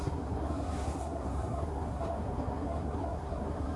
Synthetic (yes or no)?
yes